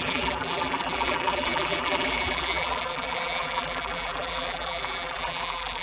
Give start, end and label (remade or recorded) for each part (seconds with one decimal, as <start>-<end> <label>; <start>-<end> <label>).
0.0-5.8 remade